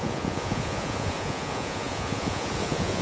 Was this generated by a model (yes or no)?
yes